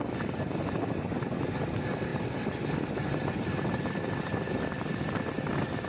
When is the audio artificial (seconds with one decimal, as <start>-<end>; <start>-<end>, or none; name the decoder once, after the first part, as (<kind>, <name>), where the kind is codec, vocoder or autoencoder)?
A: none